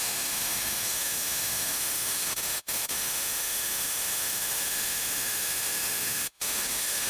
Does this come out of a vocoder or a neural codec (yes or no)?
yes